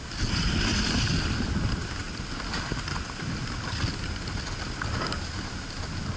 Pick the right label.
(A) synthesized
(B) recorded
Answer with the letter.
B